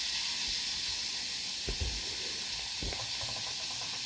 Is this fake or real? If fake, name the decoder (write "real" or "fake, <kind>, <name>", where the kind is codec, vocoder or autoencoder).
real